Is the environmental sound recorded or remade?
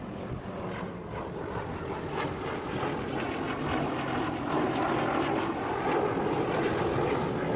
recorded